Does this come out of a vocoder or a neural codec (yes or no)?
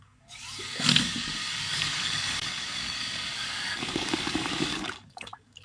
yes